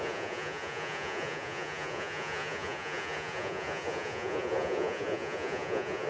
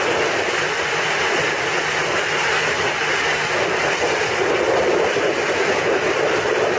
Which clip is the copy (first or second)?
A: first